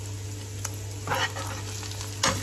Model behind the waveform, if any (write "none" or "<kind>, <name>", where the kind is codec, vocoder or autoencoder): none